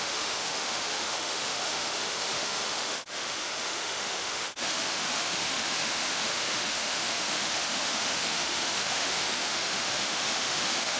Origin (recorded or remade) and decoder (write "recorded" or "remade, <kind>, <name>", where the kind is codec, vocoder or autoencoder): remade, autoencoder, DAC-VAE